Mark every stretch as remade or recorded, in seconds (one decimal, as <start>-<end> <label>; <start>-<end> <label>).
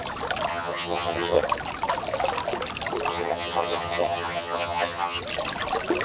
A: 0.0-0.5 recorded; 0.5-1.4 remade; 1.4-3.1 recorded; 3.1-5.2 remade; 5.2-6.0 recorded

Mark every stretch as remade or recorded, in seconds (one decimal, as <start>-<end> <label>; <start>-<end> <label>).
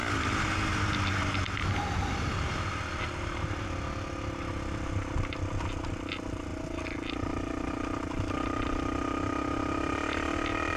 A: 0.0-10.8 recorded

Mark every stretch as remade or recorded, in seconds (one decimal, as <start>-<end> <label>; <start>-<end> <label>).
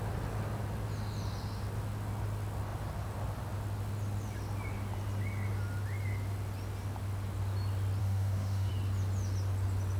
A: 0.0-8.0 recorded; 8.0-8.7 remade; 8.7-10.0 recorded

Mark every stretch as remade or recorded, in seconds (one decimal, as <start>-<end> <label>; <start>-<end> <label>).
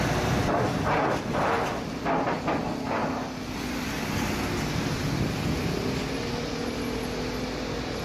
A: 0.0-3.0 recorded; 3.0-4.0 remade; 4.0-8.0 recorded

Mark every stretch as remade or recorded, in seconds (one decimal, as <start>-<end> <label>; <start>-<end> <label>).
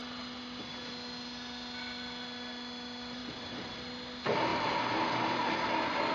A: 0.0-6.1 recorded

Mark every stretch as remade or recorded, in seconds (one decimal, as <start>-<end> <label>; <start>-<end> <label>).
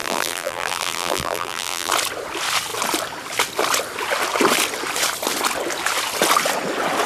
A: 0.0-1.9 remade; 1.9-7.1 recorded